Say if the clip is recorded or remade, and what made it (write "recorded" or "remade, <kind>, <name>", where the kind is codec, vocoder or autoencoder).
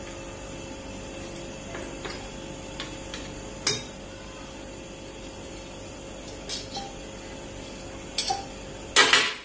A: recorded